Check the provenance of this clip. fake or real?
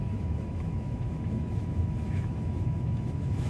fake